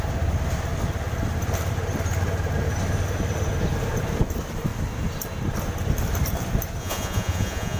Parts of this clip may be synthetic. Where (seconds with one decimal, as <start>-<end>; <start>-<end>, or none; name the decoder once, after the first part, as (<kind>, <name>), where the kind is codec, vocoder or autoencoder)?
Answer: 6.8-7.8 (vocoder, Vocos)